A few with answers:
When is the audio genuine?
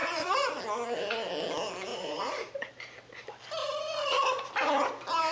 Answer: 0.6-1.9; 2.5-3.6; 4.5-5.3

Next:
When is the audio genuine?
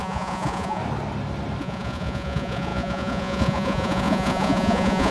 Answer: 0.8-1.6